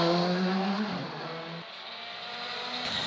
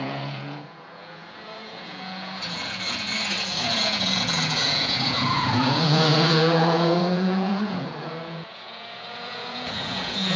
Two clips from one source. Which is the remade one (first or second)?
second